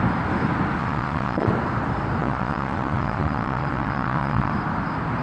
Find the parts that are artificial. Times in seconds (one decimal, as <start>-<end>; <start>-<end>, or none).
0.8-1.5; 2.2-4.5